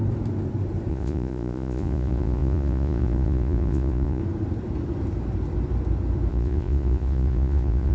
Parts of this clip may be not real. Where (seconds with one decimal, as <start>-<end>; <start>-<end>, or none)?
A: 0.9-4.2; 6.3-7.9